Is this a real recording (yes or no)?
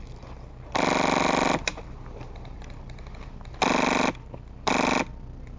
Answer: yes